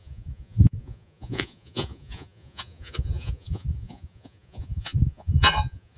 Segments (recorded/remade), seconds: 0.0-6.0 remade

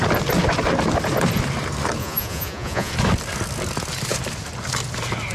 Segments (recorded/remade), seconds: 0.0-2.0 recorded; 2.0-2.9 remade; 2.9-5.3 recorded

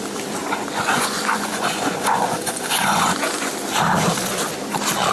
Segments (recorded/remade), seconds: 0.0-0.4 recorded; 0.4-3.5 remade; 3.5-5.1 recorded

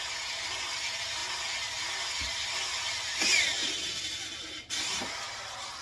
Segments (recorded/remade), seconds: 0.0-5.8 recorded

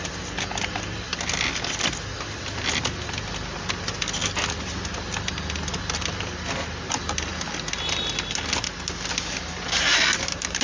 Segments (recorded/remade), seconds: 0.0-10.6 recorded